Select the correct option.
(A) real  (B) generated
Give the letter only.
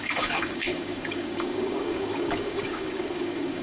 B